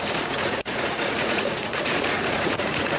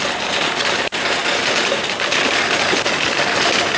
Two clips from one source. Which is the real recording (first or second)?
second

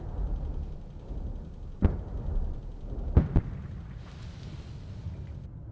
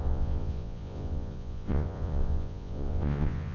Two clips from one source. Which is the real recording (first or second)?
first